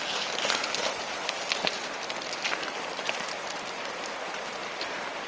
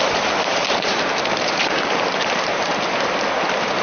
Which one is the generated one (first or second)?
second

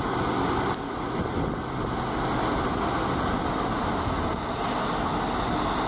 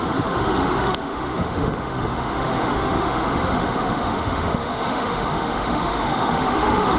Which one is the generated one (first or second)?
second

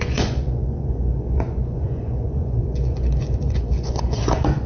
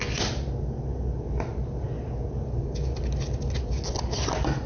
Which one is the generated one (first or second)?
first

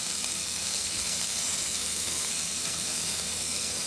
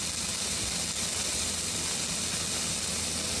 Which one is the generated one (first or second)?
first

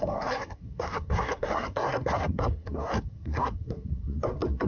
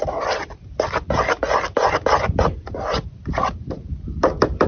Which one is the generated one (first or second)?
first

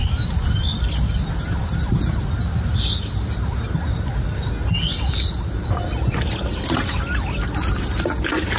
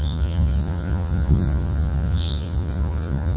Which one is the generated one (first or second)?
second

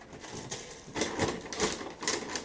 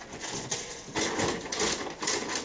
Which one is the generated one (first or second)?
second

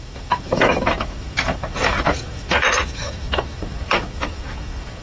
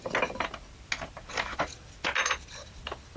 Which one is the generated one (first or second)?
first